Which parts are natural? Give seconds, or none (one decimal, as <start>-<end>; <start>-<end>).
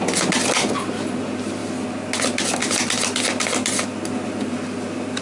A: 0.0-5.2